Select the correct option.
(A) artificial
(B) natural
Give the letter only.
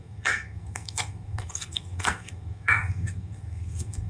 A